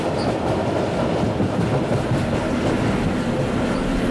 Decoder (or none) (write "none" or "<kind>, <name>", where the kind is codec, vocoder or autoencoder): none